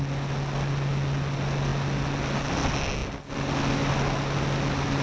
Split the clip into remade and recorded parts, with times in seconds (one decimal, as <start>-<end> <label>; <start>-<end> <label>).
0.0-5.0 recorded